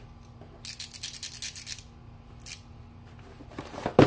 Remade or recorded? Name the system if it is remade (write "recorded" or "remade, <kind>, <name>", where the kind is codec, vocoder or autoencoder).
recorded